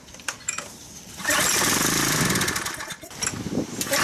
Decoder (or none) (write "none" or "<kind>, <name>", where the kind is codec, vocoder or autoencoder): vocoder, BigVGAN v2